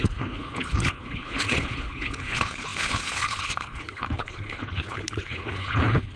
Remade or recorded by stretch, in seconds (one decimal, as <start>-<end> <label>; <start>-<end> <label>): 0.0-6.2 remade